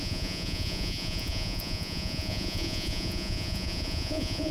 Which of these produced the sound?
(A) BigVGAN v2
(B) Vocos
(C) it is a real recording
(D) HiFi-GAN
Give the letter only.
B